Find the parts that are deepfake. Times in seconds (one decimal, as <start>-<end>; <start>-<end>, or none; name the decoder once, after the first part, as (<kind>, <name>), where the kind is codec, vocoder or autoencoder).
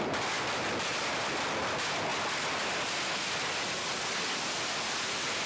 none